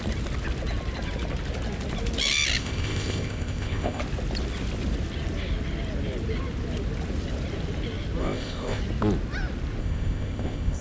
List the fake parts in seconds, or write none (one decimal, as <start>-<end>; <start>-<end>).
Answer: 2.6-4.0; 8.2-8.8; 9.8-10.8